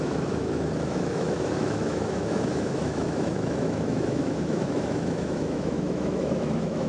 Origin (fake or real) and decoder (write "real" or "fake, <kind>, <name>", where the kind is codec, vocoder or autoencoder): fake, autoencoder, DAC-VAE